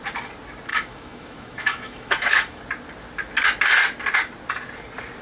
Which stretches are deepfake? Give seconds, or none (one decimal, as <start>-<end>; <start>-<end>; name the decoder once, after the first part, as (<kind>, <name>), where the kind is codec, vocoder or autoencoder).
0.7-2.6 (autoencoder, DAC-VAE)

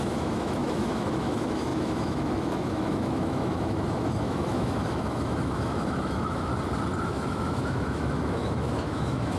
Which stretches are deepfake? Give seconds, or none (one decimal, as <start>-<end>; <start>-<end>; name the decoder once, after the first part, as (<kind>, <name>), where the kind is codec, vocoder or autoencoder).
0.0-6.5 (autoencoder, DAC-VAE); 7.0-9.4